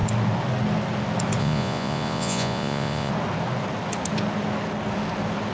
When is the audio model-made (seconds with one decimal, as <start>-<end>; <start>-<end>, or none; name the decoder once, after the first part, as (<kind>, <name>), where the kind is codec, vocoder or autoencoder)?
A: 1.4-3.1 (vocoder, Vocos)